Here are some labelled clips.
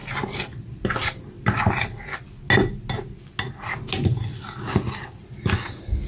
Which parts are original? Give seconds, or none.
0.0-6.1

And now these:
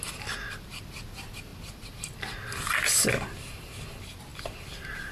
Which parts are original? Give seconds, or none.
0.0-5.1

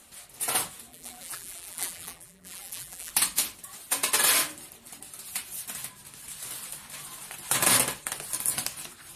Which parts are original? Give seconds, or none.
0.0-0.9; 3.1-9.2

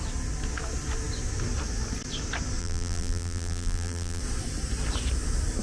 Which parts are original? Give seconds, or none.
0.0-2.6; 4.2-5.6

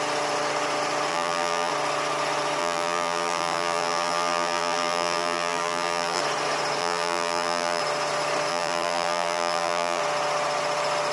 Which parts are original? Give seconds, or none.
0.0-1.1; 1.7-2.6; 6.2-6.8; 7.8-8.5; 10.0-11.1